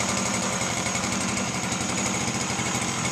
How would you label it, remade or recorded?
remade